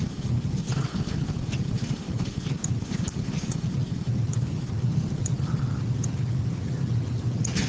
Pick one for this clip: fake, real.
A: real